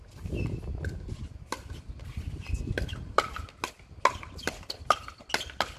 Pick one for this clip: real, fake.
real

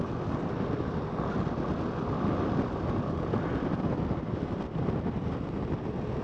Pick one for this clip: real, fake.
real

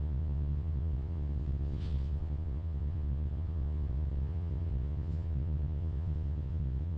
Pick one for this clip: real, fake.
fake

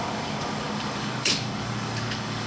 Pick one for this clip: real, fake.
fake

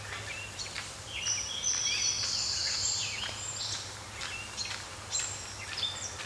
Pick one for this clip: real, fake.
real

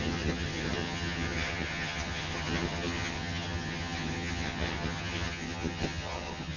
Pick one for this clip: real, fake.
fake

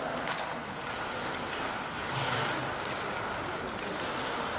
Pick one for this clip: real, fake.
real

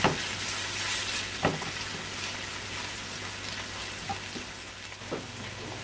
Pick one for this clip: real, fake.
real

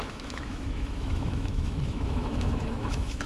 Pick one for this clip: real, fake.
fake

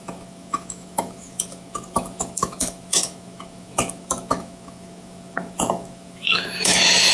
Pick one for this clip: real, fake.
fake